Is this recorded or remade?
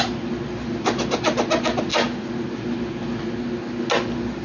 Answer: recorded